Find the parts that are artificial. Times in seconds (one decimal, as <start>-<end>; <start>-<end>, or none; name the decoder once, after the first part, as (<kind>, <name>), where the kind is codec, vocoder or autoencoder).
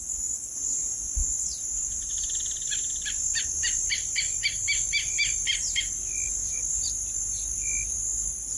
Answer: none